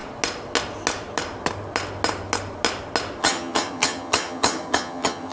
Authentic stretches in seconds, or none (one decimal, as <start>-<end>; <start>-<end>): 0.0-3.2